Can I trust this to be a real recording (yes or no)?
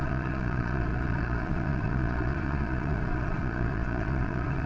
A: no